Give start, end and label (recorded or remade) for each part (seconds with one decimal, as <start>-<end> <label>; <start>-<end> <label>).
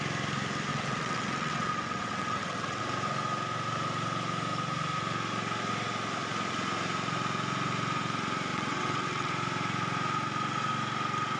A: 0.0-0.7 recorded; 0.7-2.8 remade; 2.8-8.5 recorded; 8.5-9.3 remade; 9.3-11.4 recorded